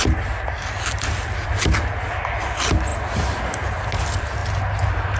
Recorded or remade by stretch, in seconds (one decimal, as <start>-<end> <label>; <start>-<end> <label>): 0.0-5.2 recorded